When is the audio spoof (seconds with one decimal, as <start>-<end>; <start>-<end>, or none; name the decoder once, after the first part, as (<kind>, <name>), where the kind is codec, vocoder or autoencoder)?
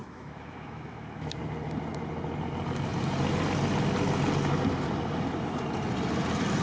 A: 0.0-1.4 (autoencoder, DAC-VAE)